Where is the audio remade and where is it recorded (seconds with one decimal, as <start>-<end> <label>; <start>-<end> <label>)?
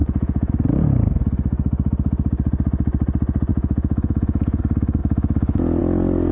0.0-0.5 remade; 0.5-3.5 recorded; 3.5-4.6 remade; 4.6-6.3 recorded